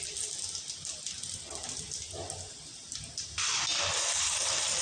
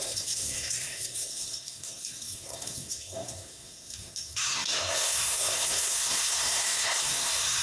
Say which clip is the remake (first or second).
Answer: second